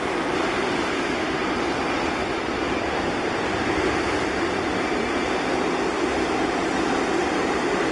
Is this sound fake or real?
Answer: fake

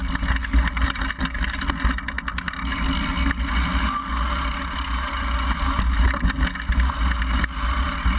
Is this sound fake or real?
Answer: real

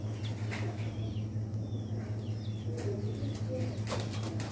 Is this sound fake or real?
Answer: real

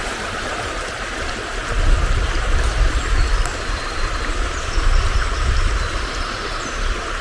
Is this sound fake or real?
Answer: fake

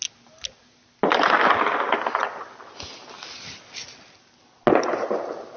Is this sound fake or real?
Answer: real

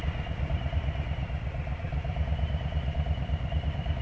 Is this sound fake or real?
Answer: fake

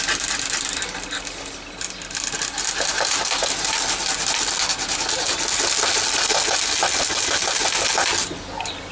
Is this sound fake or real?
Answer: real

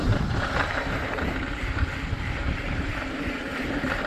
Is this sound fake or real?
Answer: fake